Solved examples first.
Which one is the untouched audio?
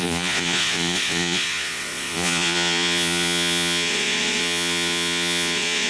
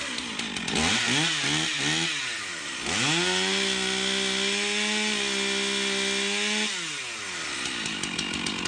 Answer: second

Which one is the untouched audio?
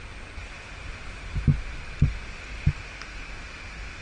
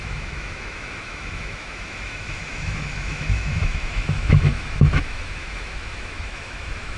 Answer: first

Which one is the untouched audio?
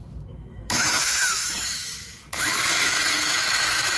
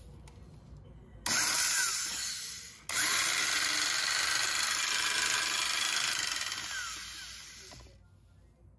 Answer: second